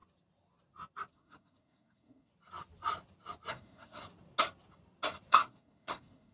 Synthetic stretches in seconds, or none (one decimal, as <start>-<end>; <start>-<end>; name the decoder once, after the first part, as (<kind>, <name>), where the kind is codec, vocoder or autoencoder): 1.1-2.3 (codec, SNAC); 3.5-4.0; 5.3-6.3